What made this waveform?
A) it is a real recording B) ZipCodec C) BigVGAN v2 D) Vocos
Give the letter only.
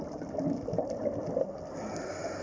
A